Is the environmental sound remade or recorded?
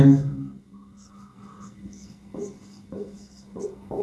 remade